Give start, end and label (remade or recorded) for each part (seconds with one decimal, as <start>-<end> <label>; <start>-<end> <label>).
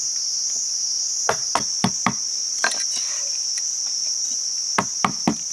0.0-5.5 recorded